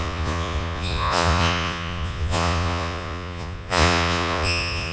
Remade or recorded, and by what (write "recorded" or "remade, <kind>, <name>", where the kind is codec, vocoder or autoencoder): remade, vocoder, Vocos